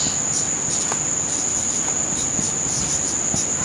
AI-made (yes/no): no